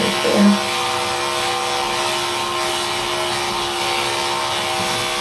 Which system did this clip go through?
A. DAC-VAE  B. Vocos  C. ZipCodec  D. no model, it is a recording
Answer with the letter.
D